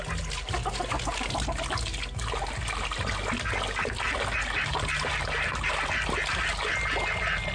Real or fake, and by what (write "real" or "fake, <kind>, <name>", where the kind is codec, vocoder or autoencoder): real